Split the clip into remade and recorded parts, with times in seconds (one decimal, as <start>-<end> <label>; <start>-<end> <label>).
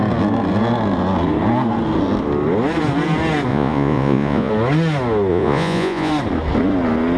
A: 0.0-3.5 recorded; 3.5-4.5 remade; 4.5-5.3 recorded; 5.3-6.1 remade; 6.1-7.2 recorded